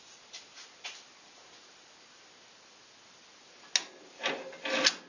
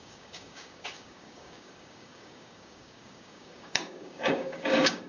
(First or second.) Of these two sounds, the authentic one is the first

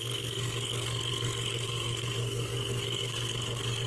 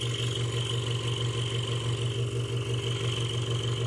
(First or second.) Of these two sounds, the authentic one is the second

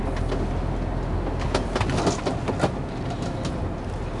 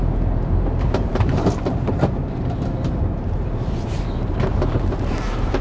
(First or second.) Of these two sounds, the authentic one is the first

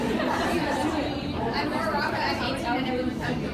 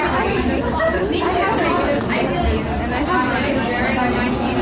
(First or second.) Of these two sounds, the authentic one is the second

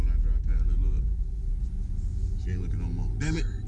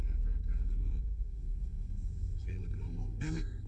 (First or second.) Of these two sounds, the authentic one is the first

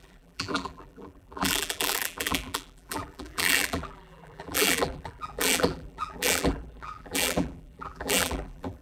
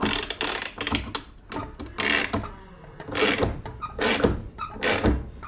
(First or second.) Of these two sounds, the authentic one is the second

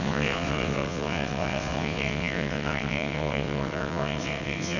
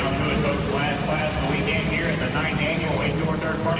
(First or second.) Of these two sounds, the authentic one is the second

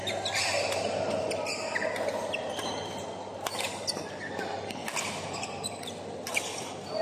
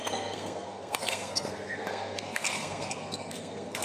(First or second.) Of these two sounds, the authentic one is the first